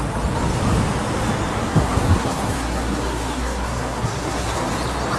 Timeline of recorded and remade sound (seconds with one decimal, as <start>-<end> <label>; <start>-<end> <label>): 0.0-1.6 recorded; 1.6-4.7 remade; 4.7-5.2 recorded